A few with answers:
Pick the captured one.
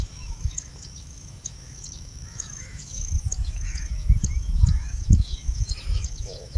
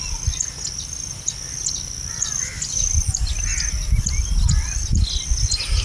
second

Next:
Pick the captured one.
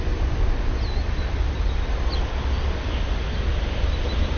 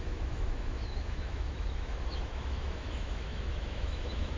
first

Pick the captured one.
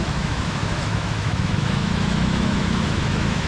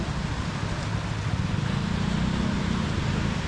second